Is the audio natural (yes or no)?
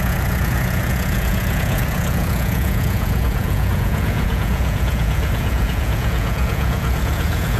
no